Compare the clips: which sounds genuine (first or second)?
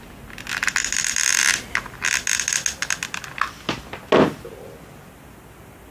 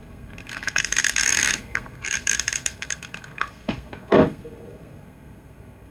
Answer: first